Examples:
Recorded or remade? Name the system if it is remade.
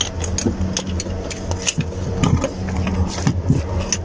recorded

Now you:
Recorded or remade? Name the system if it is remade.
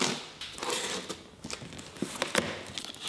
recorded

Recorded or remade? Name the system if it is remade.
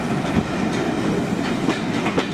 recorded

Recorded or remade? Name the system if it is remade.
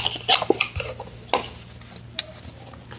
recorded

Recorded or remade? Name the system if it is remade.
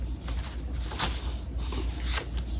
recorded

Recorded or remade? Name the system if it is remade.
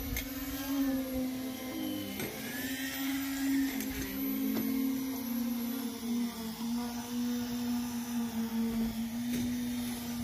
recorded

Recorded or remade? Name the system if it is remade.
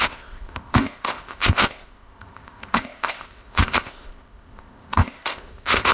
remade, codec, ZipCodec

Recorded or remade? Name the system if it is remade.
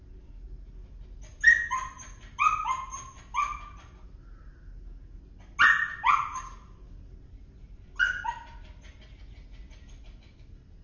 recorded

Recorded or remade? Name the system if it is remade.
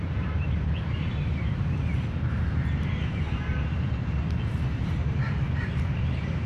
remade, vocoder, BigVGAN v2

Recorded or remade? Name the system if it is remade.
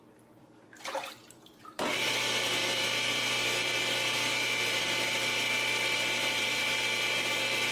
remade, vocoder, BigVGAN v2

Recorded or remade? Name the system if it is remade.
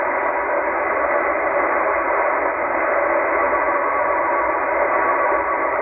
recorded